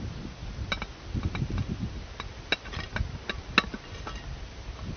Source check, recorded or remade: recorded